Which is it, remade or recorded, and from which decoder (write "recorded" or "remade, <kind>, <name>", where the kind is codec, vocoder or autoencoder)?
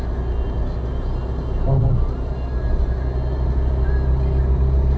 recorded